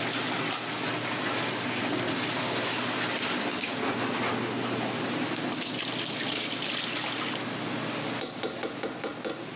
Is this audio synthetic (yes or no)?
no